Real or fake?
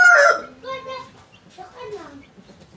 real